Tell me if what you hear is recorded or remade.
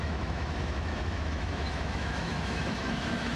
remade